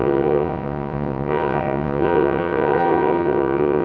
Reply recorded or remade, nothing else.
remade